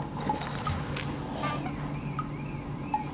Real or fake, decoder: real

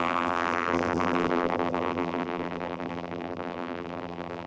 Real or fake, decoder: fake, vocoder, BigVGAN v2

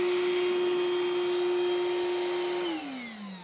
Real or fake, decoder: real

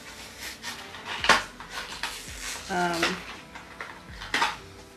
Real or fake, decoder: real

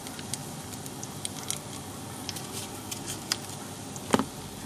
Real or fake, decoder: real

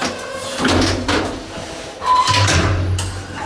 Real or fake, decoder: real